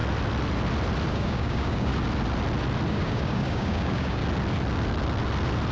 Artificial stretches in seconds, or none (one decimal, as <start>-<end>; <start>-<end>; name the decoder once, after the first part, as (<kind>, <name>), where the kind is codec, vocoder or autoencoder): 1.1-1.9 (codec, DAC); 2.9-4.2